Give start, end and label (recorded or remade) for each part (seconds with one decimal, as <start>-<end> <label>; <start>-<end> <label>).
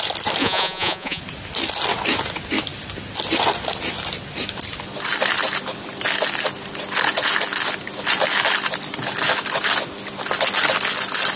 0.0-0.4 recorded; 0.4-1.2 remade; 1.2-11.4 recorded